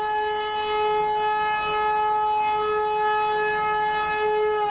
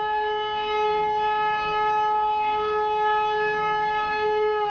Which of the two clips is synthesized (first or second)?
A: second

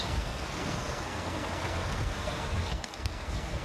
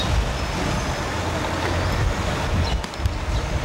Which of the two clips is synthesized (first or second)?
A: first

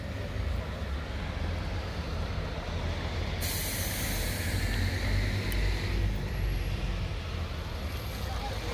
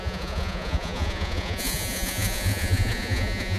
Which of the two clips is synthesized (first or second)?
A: second